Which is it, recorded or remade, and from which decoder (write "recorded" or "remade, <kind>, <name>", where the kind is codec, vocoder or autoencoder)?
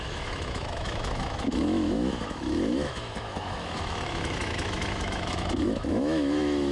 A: remade, autoencoder, DAC-VAE